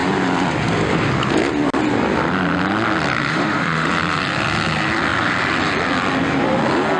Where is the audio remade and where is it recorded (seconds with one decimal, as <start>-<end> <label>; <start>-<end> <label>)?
0.0-3.3 recorded; 3.3-3.9 remade; 3.9-7.0 recorded